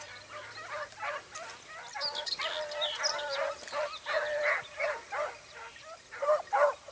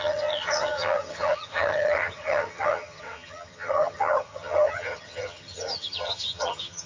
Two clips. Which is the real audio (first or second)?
first